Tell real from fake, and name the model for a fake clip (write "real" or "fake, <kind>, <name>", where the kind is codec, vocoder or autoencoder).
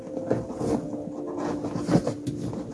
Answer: real